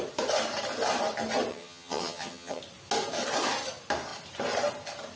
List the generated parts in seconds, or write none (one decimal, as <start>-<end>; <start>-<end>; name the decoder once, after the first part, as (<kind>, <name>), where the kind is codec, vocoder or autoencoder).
1.5-2.6 (vocoder, HiFi-GAN)